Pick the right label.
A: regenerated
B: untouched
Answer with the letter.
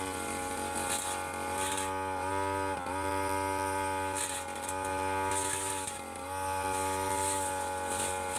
B